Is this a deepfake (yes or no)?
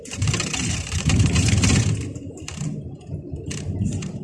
yes